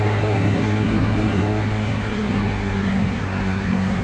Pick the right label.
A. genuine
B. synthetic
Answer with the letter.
B